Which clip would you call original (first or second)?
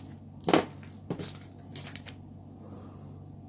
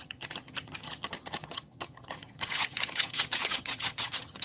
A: first